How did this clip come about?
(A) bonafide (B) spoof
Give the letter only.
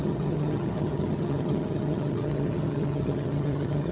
B